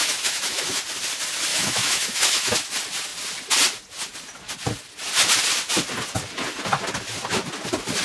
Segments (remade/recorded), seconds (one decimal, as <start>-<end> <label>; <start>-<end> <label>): 0.0-0.8 remade; 0.8-1.5 recorded; 1.5-2.7 remade; 2.7-8.0 recorded